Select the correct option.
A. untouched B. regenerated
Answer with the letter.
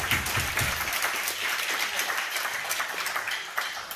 A